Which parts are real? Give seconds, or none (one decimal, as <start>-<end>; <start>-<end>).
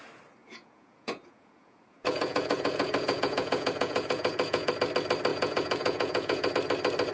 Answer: 0.0-0.4; 4.7-5.3; 6.5-7.1